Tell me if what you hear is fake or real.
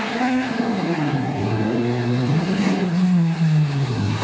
fake